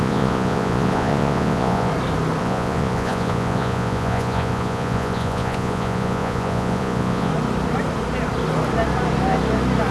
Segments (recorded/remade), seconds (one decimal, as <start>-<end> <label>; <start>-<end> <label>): 0.0-1.9 remade; 1.9-2.4 recorded; 2.4-7.3 remade; 7.3-9.9 recorded